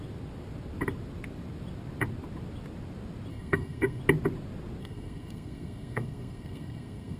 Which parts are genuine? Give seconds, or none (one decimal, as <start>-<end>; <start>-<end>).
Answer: 0.0-3.3; 4.0-4.8